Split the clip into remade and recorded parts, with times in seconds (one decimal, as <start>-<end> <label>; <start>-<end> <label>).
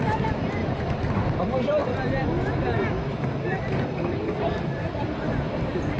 0.0-0.6 remade; 0.6-1.4 recorded; 1.4-6.0 remade